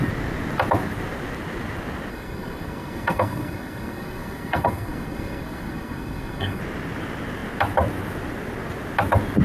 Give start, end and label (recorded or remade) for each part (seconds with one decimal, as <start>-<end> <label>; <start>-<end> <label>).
0.0-2.1 recorded; 2.1-6.6 remade; 6.6-9.4 recorded